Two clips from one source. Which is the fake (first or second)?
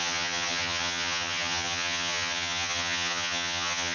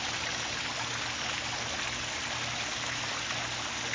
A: first